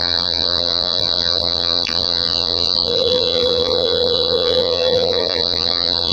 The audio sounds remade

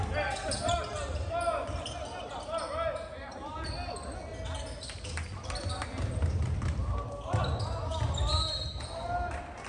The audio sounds recorded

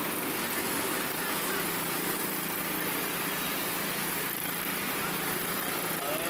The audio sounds recorded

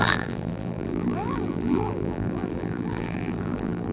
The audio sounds remade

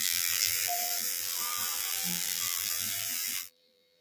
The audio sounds remade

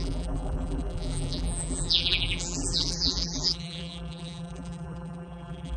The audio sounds remade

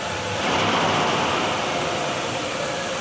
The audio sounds recorded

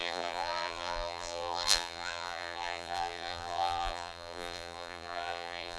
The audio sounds remade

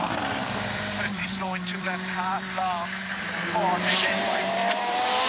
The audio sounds remade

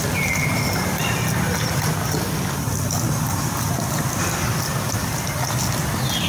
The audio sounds recorded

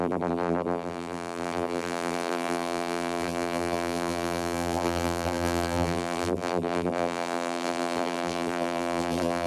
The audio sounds remade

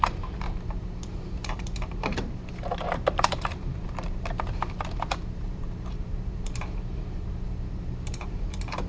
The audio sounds remade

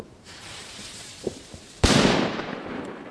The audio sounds remade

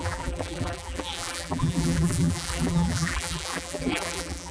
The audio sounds remade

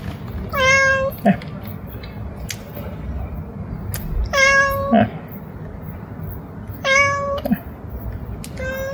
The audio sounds recorded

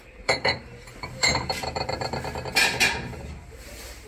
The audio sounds remade